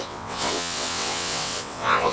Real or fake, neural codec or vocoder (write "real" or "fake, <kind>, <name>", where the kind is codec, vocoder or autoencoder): fake, vocoder, WaveNeXt